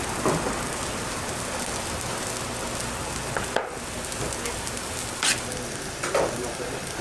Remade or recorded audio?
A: recorded